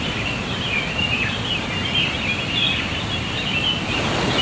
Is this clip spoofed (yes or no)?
no